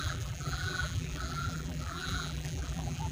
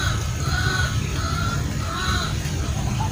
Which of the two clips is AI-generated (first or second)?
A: first